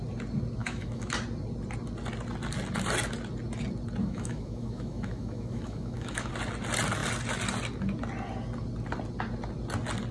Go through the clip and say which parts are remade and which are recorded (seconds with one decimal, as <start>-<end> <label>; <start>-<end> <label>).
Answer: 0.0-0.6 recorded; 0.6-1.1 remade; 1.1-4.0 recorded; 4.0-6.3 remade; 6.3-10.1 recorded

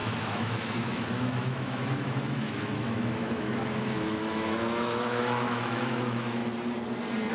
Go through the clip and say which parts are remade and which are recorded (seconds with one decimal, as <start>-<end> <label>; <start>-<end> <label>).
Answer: 0.0-6.4 remade; 6.4-7.3 recorded

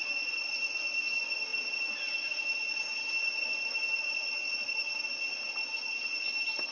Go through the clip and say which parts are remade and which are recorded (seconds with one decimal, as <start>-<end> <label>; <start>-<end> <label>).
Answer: 0.0-6.7 recorded

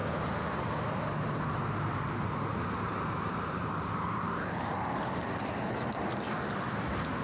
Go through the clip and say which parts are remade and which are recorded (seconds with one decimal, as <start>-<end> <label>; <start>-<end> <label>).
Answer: 0.0-2.9 recorded; 2.9-5.2 remade; 5.2-7.2 recorded

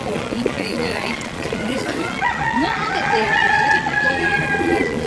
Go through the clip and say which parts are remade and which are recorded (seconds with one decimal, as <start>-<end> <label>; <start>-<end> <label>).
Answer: 0.0-5.1 remade

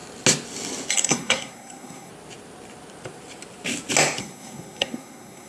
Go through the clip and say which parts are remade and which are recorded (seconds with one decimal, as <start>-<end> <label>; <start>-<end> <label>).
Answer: 0.0-0.9 recorded; 0.9-2.1 remade; 2.1-4.2 recorded; 4.2-5.5 remade

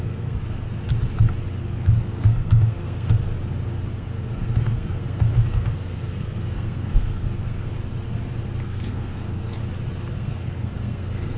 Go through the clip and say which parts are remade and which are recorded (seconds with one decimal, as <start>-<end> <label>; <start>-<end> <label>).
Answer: 0.0-0.7 remade; 0.7-1.6 recorded; 1.6-3.3 remade; 3.3-3.9 recorded; 3.9-7.7 remade; 7.7-8.6 recorded; 8.6-9.6 remade; 9.6-10.1 recorded; 10.1-11.4 remade